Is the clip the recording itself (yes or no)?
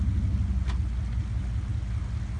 yes